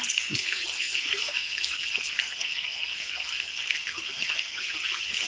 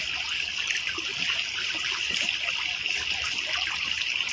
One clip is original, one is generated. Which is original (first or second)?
second